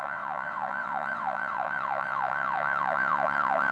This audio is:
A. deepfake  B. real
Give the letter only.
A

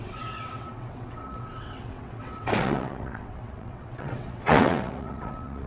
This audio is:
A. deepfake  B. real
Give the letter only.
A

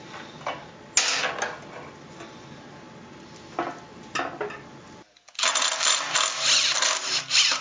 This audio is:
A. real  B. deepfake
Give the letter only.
A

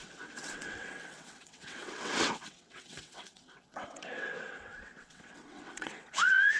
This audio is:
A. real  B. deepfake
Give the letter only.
B